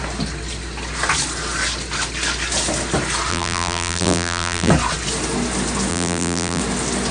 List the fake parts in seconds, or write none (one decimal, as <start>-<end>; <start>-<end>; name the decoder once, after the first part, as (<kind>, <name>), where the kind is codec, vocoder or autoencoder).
3.3-4.7 (vocoder, BigVGAN v2); 5.9-6.6